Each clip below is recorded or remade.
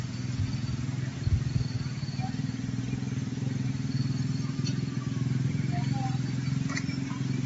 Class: recorded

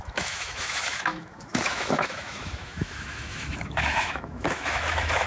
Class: remade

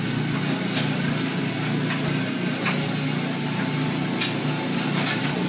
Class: recorded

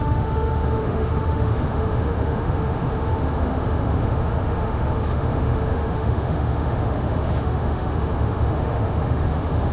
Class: remade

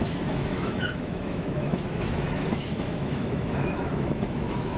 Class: remade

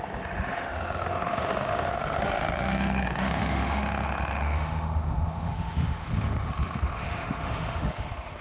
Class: remade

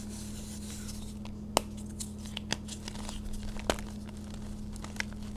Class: recorded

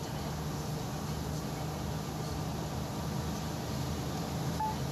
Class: recorded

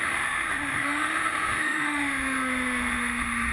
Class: remade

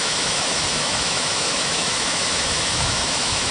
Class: remade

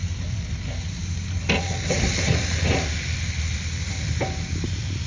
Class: recorded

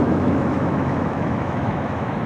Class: remade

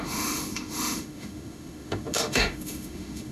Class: remade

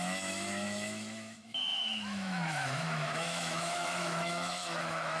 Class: remade